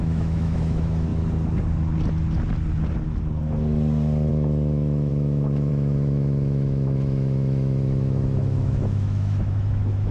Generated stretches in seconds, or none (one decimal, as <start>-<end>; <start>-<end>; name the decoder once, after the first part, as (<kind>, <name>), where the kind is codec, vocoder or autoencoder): 0.0-1.1 (autoencoder, DAC-VAE); 4.3-10.1